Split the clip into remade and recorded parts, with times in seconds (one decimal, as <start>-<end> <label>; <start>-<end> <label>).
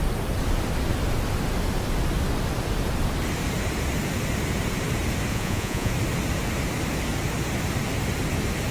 0.0-5.3 recorded; 5.3-5.9 remade; 5.9-8.7 recorded